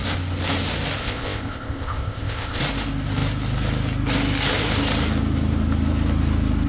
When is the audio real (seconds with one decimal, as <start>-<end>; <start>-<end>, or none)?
0.0-1.0; 2.6-6.7

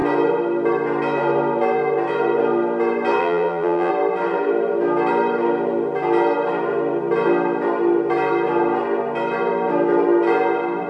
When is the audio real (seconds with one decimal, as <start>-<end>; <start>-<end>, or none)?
0.0-3.2; 3.9-10.9

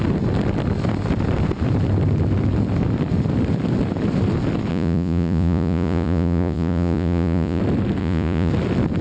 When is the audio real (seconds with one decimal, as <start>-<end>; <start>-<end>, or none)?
0.0-4.7; 7.6-8.0; 8.5-9.0

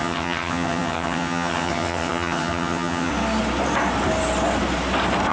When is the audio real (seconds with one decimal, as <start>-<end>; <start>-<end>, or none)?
3.1-5.3

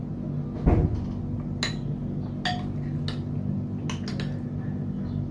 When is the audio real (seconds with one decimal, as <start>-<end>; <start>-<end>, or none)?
0.0-5.3

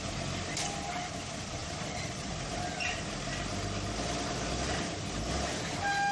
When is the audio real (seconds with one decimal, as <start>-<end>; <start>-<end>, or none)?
0.0-6.1